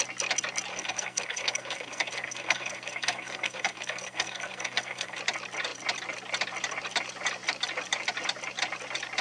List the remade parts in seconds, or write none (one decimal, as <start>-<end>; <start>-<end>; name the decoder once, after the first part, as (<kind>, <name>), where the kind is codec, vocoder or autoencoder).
0.7-5.2 (codec, SNAC)